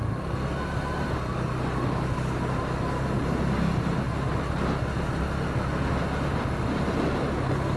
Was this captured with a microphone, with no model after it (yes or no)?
yes